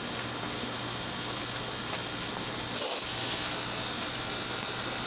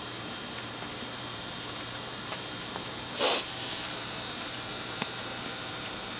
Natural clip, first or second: first